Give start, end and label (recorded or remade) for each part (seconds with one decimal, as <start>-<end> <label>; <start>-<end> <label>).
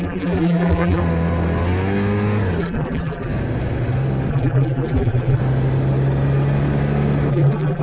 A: 0.0-1.0 remade; 1.0-2.6 recorded; 2.6-3.3 remade; 3.3-4.3 recorded; 4.3-5.4 remade; 5.4-7.3 recorded; 7.3-7.8 remade